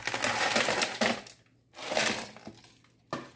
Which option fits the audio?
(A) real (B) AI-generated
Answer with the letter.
A